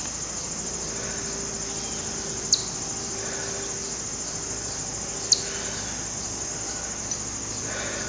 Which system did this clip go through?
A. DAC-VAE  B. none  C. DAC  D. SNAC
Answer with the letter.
B